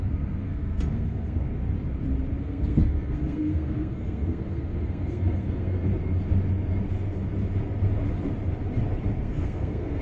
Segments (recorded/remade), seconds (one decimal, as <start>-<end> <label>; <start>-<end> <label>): 0.0-1.5 remade; 1.5-2.4 recorded; 2.4-5.9 remade; 5.9-9.1 recorded; 9.1-10.0 remade